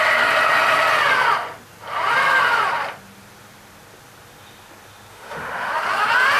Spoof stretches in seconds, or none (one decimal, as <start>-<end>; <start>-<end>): 5.1-5.7